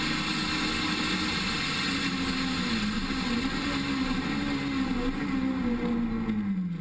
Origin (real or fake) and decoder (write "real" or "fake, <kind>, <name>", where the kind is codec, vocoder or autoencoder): real